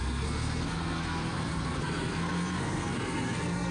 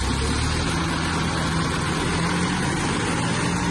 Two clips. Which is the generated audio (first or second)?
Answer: first